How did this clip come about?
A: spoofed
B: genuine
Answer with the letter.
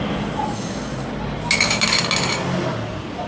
B